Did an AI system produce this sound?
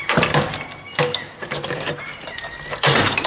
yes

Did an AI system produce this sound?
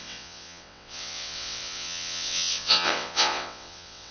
yes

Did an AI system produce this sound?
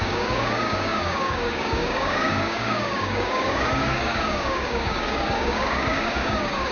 yes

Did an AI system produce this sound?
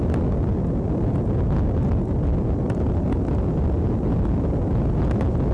no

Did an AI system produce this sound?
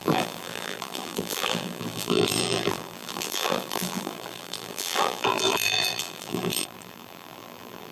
yes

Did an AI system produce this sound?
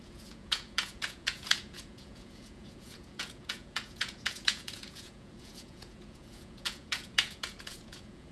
yes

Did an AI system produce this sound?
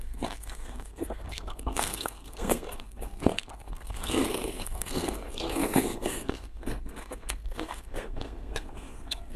yes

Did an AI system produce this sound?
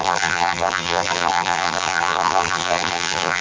yes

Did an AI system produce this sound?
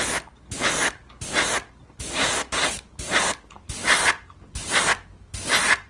no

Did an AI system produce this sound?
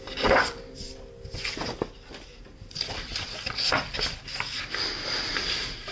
no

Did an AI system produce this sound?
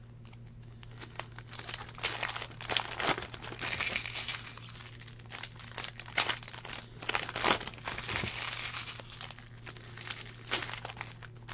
no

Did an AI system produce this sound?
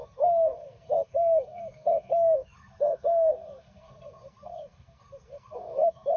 yes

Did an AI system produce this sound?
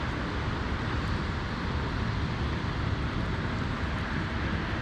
no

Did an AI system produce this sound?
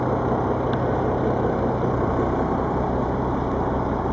no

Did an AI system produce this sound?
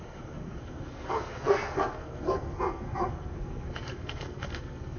yes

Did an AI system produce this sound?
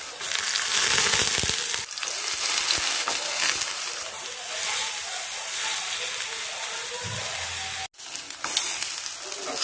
no